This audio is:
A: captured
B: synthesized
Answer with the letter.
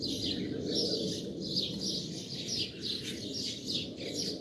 A